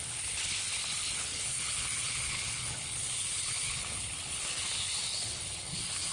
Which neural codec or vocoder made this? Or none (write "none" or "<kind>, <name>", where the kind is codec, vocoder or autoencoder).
codec, HILCodec